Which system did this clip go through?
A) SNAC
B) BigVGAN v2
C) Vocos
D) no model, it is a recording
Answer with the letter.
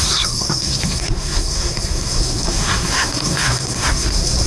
A